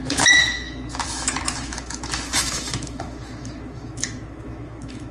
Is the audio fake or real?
fake